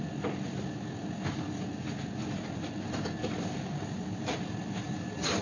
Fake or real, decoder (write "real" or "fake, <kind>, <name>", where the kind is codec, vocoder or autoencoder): real